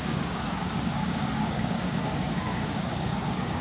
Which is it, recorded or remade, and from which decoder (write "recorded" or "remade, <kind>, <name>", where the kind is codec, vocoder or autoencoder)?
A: remade, codec, DAC